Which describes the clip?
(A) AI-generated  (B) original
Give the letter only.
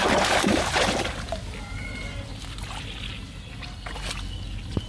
B